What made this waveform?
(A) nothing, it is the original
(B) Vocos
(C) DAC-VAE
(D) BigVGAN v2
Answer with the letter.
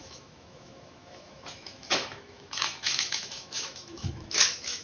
C